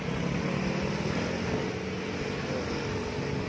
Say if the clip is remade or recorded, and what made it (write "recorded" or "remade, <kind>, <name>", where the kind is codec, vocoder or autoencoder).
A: recorded